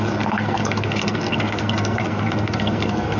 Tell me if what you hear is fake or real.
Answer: fake